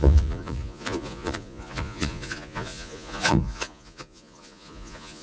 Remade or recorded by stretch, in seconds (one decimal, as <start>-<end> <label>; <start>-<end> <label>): 0.0-5.2 remade